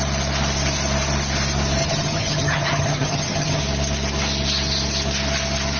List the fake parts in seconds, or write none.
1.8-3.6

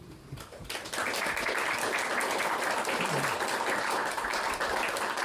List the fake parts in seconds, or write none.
none

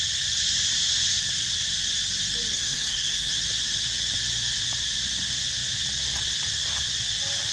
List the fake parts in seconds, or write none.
2.5-3.3

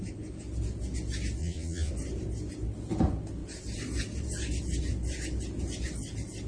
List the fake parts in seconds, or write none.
1.4-1.9